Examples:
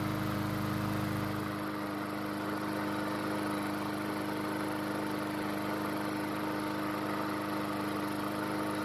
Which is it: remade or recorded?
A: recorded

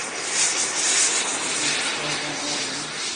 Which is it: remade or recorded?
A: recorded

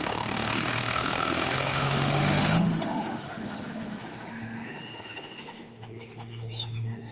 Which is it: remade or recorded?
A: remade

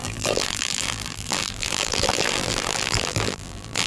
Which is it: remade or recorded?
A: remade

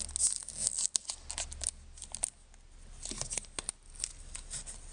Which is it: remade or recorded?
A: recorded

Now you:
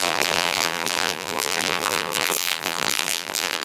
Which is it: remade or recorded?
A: remade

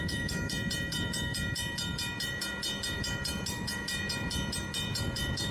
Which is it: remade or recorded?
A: remade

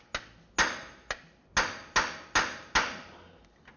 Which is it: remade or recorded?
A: recorded